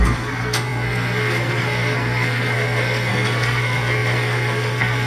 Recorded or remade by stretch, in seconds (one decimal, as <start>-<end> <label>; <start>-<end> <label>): 0.0-5.1 remade